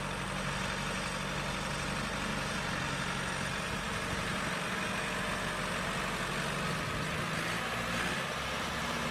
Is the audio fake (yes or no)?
no